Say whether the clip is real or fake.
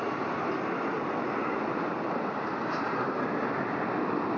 real